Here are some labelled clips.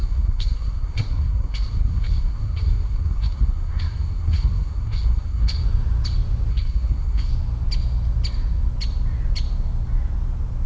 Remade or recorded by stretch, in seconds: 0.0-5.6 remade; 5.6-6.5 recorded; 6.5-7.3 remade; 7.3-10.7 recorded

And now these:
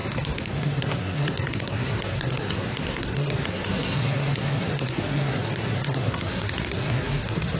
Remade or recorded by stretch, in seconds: 0.0-7.6 remade